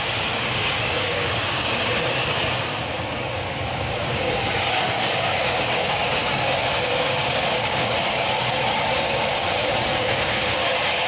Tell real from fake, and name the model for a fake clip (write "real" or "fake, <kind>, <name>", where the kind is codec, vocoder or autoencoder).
fake, codec, DAC